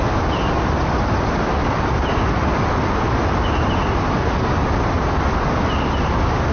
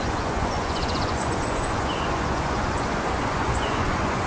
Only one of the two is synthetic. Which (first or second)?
second